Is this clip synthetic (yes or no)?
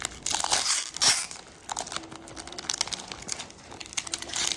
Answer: no